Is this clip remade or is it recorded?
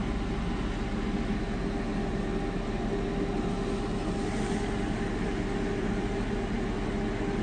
recorded